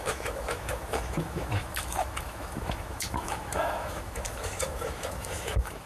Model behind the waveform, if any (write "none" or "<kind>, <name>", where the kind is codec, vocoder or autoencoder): autoencoder, DAC-VAE